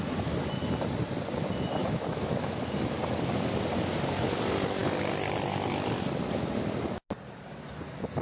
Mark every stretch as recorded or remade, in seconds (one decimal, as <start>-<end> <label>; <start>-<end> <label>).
0.0-1.8 recorded; 1.8-2.7 remade; 2.7-8.2 recorded